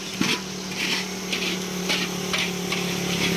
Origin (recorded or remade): recorded